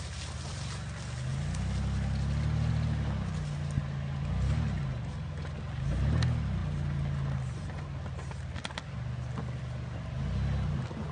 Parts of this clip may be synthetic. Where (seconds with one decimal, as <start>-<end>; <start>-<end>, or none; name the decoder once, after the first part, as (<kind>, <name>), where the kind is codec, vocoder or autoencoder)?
none